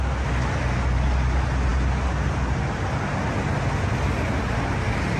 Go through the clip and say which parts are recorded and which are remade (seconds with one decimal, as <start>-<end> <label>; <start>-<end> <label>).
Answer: 0.0-5.2 recorded